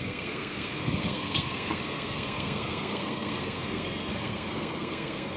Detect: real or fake fake